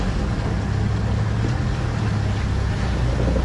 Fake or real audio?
real